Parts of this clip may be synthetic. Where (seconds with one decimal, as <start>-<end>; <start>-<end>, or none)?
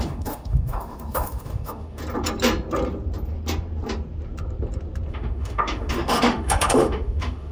0.0-2.0; 5.1-7.5